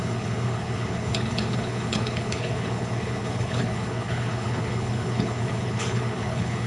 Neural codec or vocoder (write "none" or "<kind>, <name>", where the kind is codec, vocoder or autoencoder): codec, HILCodec